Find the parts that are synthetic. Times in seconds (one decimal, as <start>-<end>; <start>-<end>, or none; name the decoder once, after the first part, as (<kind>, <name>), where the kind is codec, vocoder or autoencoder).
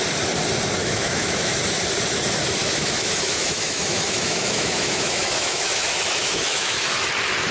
0.8-1.6 (autoencoder, DAC-VAE); 2.6-7.1